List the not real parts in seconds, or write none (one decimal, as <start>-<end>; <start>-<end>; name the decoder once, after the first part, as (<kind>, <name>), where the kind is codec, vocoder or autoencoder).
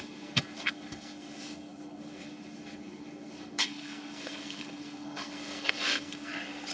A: 0.0-6.7 (codec, SNAC)